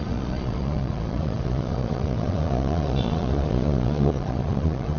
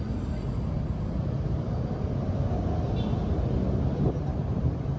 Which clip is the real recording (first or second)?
second